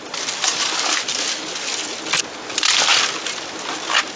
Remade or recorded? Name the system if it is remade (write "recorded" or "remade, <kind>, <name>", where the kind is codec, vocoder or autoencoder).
recorded